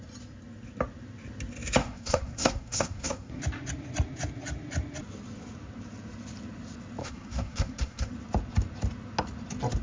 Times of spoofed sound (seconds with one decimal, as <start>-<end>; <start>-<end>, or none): 1.8-3.4; 7.0-8.1